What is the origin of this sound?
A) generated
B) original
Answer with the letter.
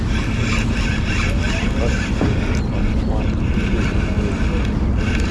B